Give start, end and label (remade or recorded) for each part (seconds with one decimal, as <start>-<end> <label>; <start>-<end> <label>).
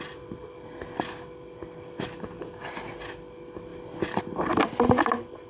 0.0-5.5 recorded